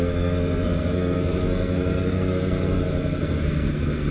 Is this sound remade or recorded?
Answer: remade